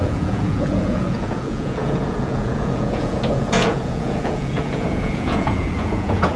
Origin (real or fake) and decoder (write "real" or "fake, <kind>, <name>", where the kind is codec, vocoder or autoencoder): fake, vocoder, Vocos